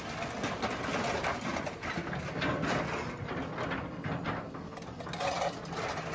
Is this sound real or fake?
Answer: real